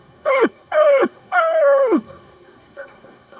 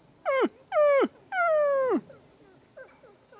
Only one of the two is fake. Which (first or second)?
first